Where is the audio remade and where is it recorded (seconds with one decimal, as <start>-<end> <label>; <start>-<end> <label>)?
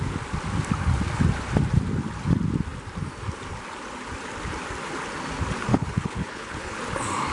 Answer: 0.0-5.7 recorded; 5.7-6.8 remade; 6.8-7.3 recorded